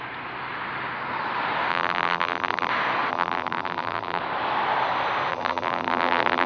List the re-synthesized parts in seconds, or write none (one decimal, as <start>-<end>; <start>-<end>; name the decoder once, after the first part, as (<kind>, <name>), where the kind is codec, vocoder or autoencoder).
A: 1.7-2.7 (vocoder, BigVGAN v2); 3.1-4.2; 5.3-6.5